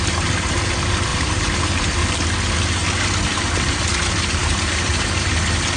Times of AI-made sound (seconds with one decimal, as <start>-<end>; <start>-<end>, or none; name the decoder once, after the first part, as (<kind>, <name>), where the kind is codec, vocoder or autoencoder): 1.1-2.0 (vocoder, BigVGAN v2); 4.4-5.3